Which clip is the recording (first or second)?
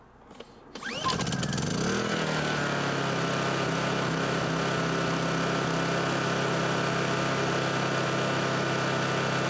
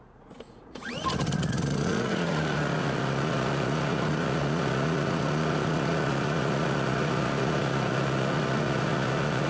first